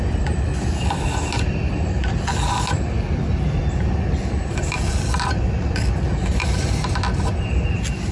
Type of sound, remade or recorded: recorded